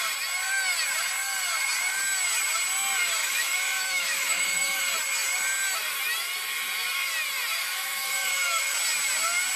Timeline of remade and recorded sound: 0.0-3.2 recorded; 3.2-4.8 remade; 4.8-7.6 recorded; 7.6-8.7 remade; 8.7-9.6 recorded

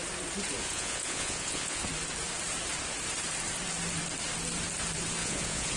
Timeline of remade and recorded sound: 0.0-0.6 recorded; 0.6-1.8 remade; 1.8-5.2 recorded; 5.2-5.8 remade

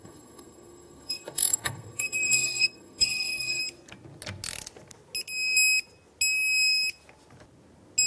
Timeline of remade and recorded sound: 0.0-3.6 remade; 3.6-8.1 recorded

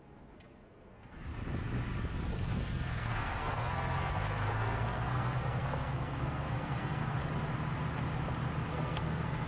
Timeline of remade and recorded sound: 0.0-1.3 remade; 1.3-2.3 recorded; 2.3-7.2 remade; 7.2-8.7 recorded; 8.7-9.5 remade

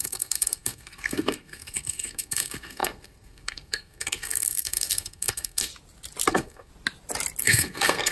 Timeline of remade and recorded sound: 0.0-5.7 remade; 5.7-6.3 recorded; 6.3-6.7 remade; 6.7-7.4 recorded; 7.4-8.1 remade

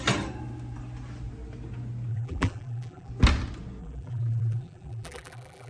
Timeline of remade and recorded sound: 0.0-2.1 recorded; 2.1-3.1 remade; 3.1-3.8 recorded; 3.8-5.7 remade